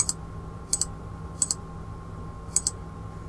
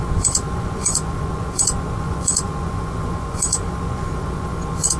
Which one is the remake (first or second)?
second